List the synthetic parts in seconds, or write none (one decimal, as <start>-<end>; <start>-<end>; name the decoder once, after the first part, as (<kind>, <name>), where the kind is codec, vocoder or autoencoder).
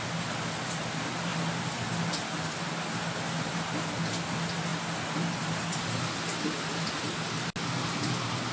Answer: none